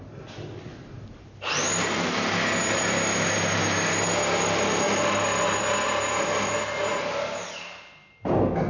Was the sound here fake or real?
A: real